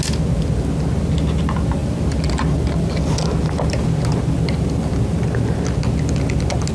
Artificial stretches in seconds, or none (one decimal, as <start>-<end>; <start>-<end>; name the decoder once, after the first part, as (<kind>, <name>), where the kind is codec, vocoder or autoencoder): none